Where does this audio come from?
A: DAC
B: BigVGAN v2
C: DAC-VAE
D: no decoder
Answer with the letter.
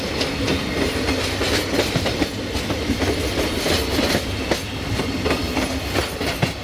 D